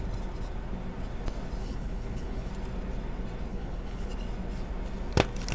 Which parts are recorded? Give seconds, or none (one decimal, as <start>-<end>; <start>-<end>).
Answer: 0.0-1.6; 2.5-3.5; 4.1-5.5